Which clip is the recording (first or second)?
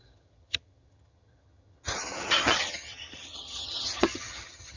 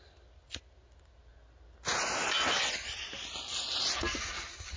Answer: second